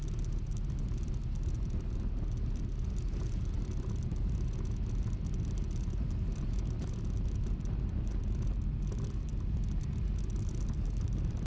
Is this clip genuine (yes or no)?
yes